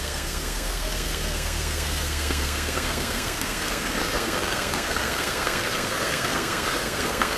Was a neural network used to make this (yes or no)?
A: yes